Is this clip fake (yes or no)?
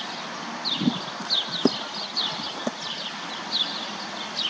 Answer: no